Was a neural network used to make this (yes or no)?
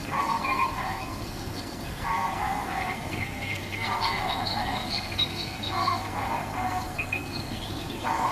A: yes